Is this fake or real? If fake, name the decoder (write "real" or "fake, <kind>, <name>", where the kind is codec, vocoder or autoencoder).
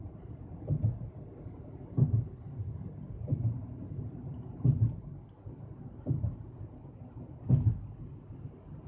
real